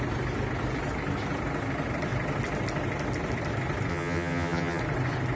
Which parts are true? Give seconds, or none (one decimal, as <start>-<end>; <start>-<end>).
0.0-3.9; 4.8-5.3